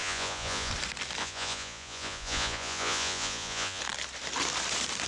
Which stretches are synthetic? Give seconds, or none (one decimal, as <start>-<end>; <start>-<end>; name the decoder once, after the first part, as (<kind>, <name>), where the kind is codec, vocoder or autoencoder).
0.0-0.7 (vocoder, Vocos); 1.2-3.8